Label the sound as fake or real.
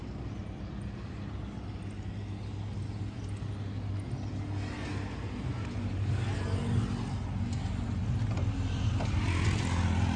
real